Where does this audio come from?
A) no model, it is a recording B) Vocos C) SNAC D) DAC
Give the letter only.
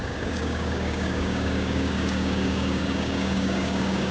D